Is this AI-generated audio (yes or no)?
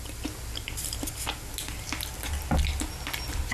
no